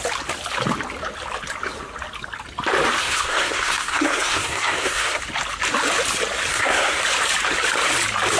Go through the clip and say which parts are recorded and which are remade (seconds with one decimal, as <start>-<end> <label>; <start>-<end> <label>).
0.0-3.0 recorded; 3.0-5.2 remade; 5.2-6.5 recorded; 6.5-7.0 remade; 7.0-8.4 recorded